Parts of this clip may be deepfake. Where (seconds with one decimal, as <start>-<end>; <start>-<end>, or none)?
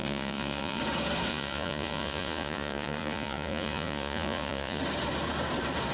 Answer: 0.0-0.8; 1.3-4.8